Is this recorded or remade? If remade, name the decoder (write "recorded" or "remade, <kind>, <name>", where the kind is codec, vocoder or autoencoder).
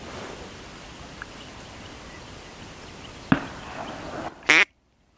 recorded